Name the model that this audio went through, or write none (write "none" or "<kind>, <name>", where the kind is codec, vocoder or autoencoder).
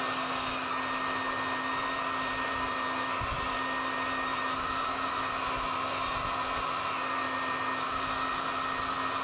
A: none